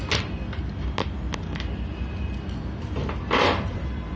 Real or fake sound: real